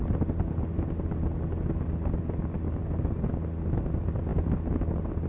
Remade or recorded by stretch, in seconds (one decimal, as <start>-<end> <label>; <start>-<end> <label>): 0.0-5.3 recorded